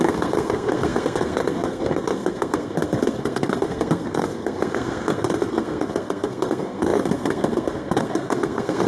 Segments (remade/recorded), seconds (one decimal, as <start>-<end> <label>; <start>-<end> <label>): 0.0-8.9 remade